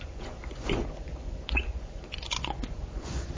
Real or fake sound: fake